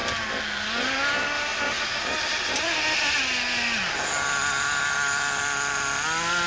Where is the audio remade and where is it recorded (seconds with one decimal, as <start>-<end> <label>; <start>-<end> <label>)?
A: 0.0-6.5 recorded